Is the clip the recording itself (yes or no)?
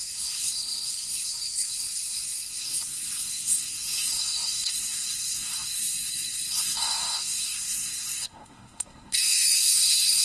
no